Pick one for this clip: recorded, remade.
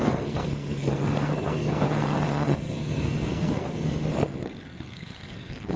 remade